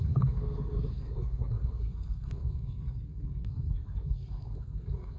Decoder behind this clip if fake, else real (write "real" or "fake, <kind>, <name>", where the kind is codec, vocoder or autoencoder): fake, codec, SNAC